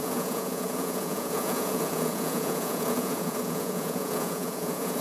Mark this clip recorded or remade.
remade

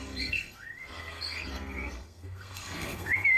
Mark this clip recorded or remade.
remade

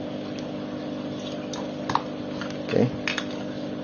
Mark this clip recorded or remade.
recorded